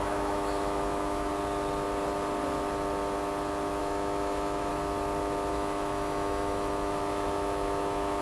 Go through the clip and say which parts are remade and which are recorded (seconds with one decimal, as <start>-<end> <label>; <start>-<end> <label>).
0.0-1.3 remade; 1.3-3.8 recorded; 3.8-4.7 remade; 4.7-5.5 recorded; 5.5-8.2 remade